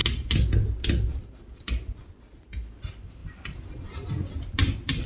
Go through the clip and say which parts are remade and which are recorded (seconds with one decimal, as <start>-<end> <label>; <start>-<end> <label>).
0.0-5.1 recorded